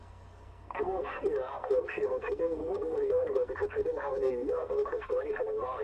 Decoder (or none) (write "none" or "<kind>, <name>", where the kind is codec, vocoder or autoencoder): codec, SNAC